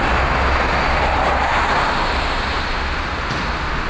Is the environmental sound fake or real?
real